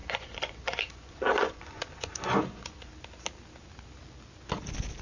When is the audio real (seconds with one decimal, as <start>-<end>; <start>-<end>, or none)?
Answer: 2.9-5.0